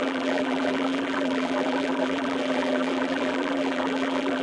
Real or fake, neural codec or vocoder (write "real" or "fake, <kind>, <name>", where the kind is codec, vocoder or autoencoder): fake, vocoder, BigVGAN v2